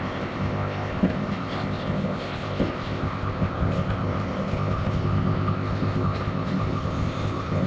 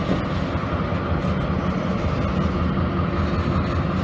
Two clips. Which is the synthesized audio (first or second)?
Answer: first